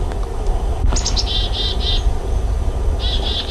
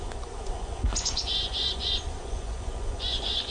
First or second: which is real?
first